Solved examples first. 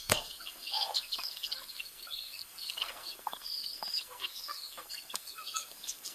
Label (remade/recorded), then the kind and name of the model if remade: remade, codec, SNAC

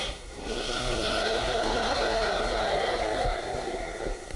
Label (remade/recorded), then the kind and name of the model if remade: remade, codec, SNAC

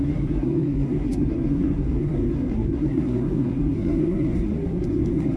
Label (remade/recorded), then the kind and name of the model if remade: remade, codec, SNAC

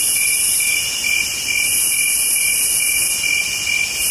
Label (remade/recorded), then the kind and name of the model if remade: recorded